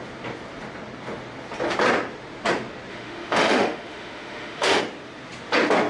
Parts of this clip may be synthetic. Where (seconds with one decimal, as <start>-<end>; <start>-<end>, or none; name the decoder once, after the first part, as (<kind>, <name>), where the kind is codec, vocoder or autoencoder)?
2.9-4.8 (autoencoder, DAC-VAE)